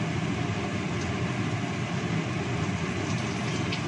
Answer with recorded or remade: recorded